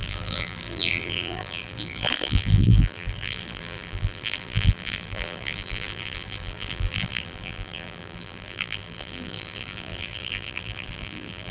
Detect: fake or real fake